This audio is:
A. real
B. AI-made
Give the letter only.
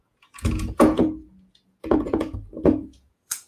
B